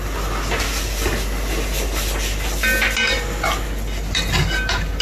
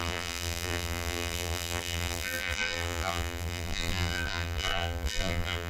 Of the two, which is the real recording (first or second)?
first